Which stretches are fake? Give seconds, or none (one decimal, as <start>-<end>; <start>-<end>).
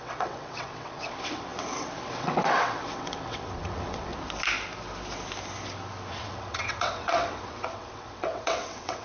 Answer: 0.0-4.1; 6.1-9.0